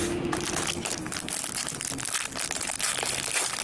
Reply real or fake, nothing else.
real